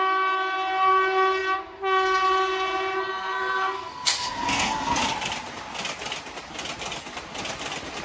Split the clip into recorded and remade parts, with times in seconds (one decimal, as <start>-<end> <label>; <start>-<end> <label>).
0.0-3.1 recorded; 3.1-5.0 remade; 5.0-8.0 recorded